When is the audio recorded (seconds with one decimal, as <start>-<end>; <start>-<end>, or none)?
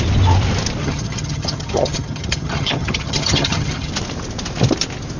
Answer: 0.0-0.8; 3.9-5.2